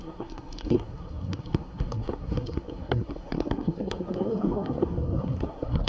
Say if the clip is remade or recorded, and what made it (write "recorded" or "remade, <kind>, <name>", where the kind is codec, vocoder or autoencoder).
remade, codec, SNAC